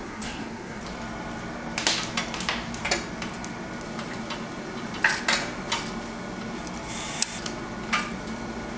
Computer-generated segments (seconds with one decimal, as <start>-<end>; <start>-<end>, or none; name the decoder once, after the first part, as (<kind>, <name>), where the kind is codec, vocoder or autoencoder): 0.0-0.8 (codec, SNAC)